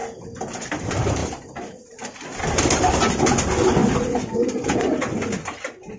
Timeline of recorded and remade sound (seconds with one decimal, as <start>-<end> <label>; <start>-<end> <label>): 0.0-1.2 recorded; 1.2-2.0 remade; 2.0-6.0 recorded